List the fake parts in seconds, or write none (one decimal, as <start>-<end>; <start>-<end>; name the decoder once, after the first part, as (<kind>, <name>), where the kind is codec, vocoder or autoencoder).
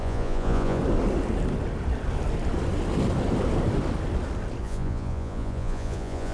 0.0-0.8 (vocoder, Vocos); 4.6-6.3